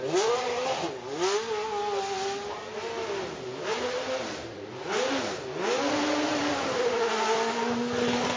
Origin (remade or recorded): recorded